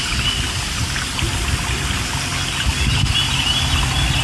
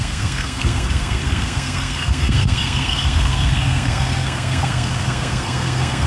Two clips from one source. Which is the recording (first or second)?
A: first